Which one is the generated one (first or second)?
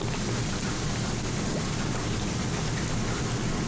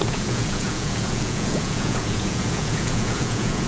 second